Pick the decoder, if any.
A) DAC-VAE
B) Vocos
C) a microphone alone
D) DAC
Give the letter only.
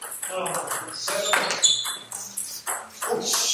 C